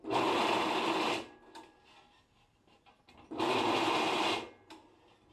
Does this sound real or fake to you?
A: real